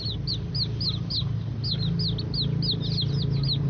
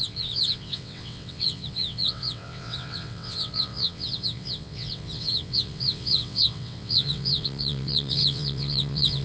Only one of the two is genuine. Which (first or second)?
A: first